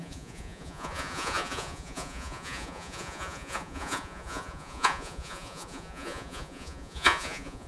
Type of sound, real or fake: fake